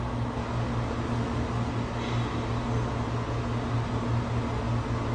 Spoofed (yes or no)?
no